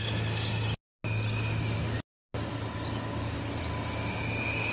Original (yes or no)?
yes